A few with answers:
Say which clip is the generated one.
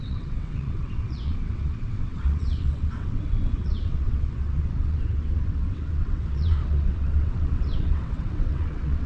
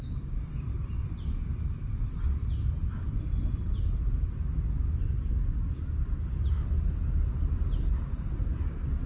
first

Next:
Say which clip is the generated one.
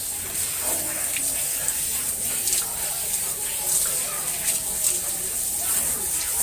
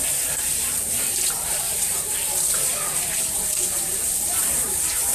second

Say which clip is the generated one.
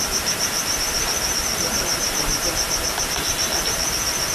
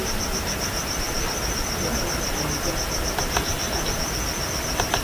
first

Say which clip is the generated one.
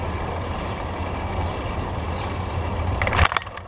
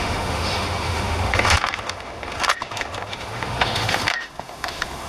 second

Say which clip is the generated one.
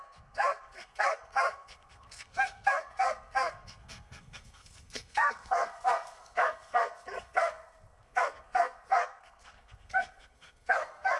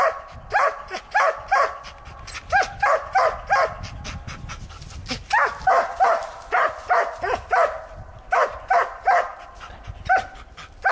first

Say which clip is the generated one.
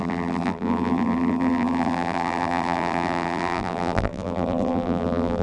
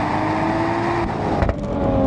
first